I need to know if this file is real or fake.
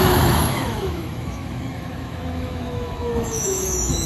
fake